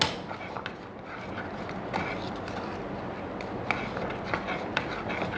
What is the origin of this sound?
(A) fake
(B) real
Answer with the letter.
B